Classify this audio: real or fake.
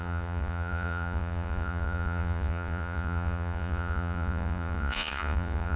fake